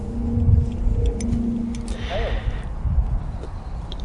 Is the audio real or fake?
real